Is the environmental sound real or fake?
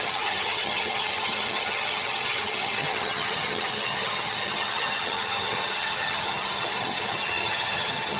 fake